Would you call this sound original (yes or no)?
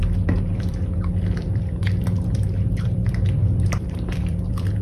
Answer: no